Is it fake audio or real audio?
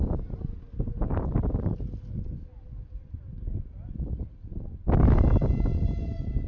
real